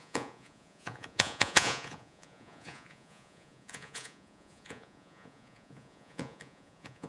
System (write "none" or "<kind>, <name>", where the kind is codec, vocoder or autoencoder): vocoder, Vocos